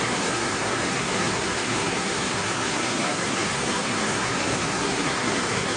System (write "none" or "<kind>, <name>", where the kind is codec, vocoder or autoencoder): codec, SNAC